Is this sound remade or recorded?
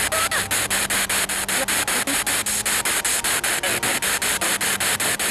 recorded